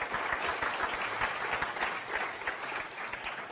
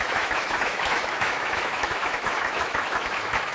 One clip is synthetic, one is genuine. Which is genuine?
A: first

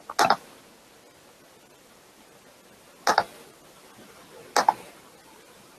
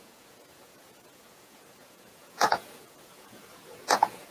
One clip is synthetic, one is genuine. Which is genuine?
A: first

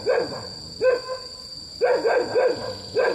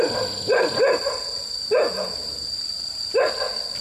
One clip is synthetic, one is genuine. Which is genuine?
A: first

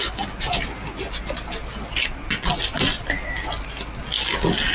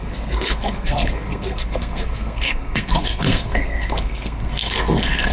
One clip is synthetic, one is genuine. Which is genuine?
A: first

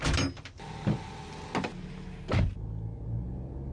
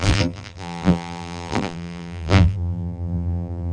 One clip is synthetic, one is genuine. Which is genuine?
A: first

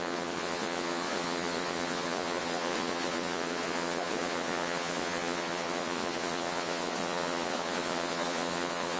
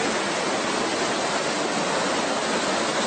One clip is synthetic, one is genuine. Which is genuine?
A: second